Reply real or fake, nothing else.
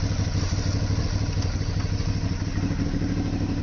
real